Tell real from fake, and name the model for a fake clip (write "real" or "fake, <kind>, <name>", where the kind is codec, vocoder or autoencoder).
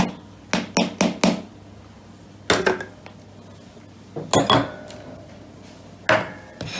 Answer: real